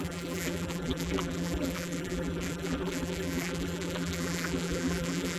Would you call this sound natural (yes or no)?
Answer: no